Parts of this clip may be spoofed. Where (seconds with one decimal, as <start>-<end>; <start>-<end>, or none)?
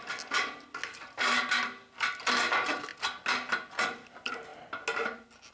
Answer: none